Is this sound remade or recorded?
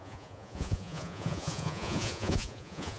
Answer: remade